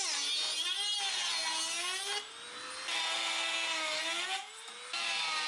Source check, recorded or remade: recorded